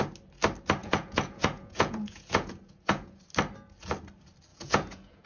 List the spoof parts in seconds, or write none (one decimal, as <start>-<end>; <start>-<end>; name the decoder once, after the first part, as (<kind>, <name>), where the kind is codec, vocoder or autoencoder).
0.8-3.2 (vocoder, Vocos); 4.5-5.3